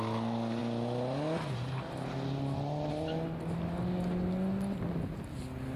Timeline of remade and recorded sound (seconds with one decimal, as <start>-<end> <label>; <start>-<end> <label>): 0.0-5.8 recorded